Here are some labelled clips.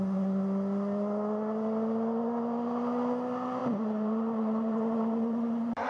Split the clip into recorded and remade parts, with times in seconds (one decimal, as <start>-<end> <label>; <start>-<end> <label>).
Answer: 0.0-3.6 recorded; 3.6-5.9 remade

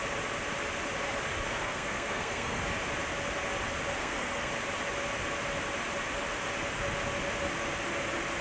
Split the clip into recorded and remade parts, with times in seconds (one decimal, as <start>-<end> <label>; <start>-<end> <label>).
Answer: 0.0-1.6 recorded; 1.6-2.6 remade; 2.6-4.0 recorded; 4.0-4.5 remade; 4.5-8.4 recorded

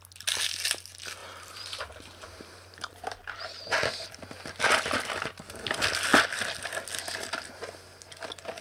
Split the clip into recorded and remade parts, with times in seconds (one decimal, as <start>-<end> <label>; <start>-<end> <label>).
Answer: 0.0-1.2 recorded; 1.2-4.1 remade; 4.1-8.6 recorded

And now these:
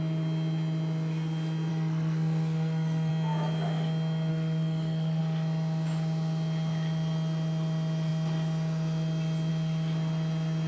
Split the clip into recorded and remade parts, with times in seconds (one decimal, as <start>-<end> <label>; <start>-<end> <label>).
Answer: 0.0-1.7 recorded; 1.7-3.1 remade; 3.1-4.3 recorded; 4.3-5.2 remade; 5.2-10.7 recorded